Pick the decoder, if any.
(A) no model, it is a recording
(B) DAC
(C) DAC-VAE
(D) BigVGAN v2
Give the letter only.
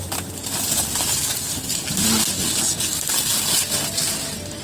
A